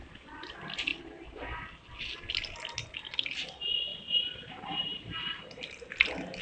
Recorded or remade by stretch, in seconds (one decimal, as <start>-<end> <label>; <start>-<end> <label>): 0.0-3.9 recorded; 3.9-5.4 remade; 5.4-6.4 recorded